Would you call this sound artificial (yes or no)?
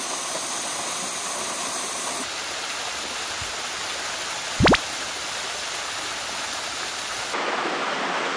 no